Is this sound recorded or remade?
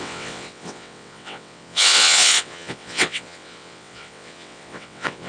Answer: remade